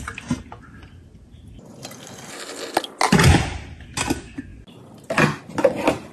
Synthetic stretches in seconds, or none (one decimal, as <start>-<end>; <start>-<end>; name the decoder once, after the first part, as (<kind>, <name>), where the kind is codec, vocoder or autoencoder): none

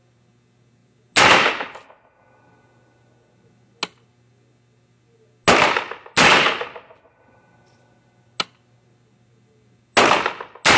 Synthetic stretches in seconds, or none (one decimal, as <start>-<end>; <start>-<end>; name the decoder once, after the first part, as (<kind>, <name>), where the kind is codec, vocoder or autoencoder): none

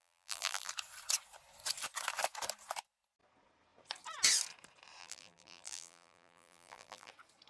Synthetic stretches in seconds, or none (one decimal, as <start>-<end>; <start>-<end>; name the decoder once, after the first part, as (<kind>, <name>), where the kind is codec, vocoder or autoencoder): 0.0-0.7 (vocoder, BigVGAN v2); 5.0-7.1

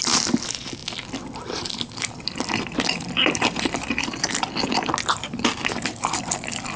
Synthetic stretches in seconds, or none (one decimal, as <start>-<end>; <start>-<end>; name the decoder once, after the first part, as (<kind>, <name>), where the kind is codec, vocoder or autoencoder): 0.8-3.9 (vocoder, BigVGAN v2)

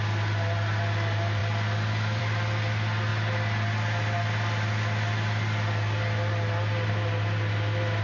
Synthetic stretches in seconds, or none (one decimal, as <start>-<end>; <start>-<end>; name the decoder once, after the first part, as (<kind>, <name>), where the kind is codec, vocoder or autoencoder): none

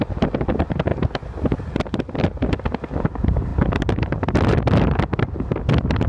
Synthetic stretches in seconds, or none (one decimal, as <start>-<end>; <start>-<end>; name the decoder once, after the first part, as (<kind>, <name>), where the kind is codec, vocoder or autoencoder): none

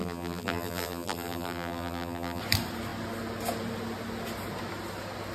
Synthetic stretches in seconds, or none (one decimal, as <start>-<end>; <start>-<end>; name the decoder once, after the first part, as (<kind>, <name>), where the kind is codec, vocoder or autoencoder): 0.0-2.4 (vocoder, BigVGAN v2)